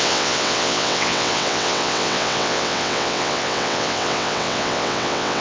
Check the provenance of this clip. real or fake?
fake